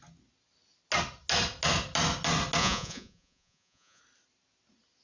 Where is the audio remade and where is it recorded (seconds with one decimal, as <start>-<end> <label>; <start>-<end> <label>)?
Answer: 0.0-2.6 recorded; 2.6-4.0 remade; 4.0-5.0 recorded